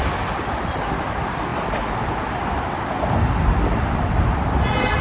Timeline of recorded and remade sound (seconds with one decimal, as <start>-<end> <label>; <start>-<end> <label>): 0.0-5.0 recorded